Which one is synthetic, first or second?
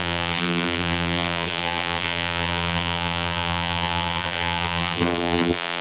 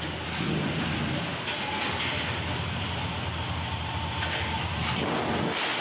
first